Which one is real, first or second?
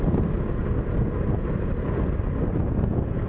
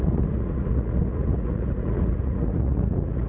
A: first